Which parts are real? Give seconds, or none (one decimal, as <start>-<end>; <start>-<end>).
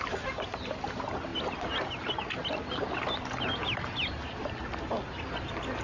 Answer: 0.0-5.8